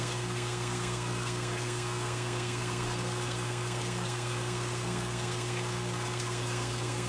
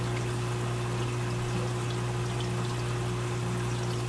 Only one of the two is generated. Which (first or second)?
first